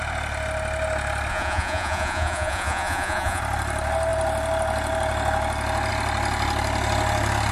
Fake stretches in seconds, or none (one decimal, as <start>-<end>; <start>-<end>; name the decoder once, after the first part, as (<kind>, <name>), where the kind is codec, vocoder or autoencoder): 1.3-3.4 (vocoder, Vocos)